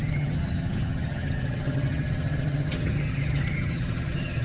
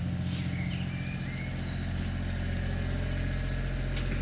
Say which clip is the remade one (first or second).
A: first